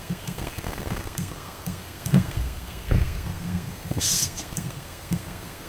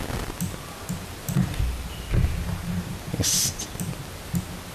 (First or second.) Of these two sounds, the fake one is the first